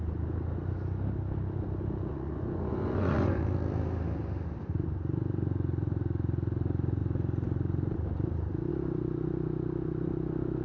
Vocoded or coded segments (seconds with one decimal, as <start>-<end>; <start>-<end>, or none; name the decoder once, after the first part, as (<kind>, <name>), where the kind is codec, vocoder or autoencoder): 2.1-3.4 (vocoder, Vocos)